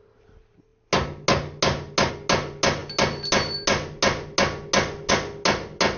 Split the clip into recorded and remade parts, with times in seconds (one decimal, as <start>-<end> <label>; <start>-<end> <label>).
0.0-6.0 recorded